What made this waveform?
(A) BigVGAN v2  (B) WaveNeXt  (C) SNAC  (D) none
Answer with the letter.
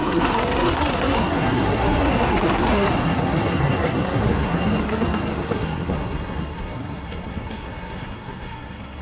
C